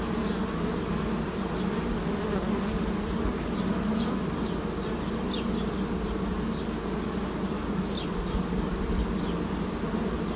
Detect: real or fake real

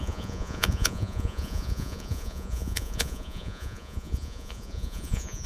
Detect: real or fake fake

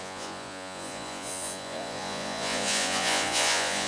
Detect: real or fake fake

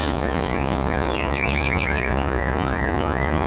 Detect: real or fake fake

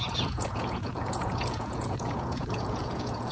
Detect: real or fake fake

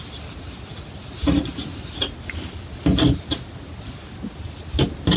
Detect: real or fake real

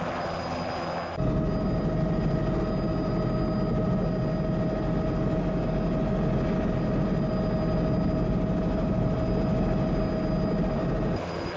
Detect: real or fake real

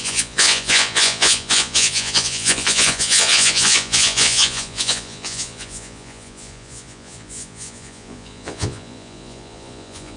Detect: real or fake fake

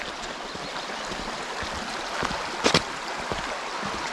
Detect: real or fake real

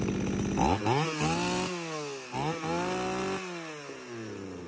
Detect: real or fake real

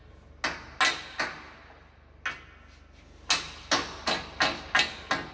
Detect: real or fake real